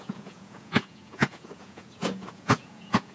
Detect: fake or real fake